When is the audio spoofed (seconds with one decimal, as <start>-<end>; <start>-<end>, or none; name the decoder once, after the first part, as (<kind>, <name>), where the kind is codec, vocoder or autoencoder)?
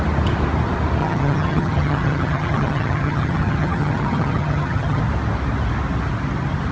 1.0-5.0 (vocoder, HiFi-GAN)